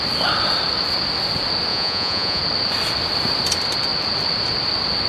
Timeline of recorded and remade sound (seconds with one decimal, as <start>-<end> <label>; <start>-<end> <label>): 0.0-1.7 recorded; 1.7-2.4 remade; 2.4-5.1 recorded